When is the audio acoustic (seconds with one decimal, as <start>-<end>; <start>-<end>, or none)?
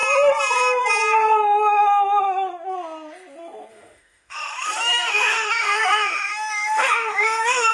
0.0-3.7